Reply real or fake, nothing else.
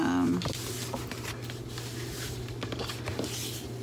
real